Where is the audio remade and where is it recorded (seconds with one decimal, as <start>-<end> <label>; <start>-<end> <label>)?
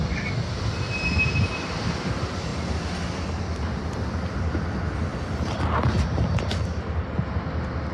0.0-7.9 recorded